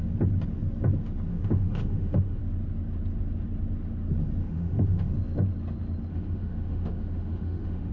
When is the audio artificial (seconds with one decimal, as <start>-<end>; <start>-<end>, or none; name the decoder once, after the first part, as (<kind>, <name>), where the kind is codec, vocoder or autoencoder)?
1.3-2.4 (autoencoder, DAC-VAE); 4.4-5.1; 6.1-7.9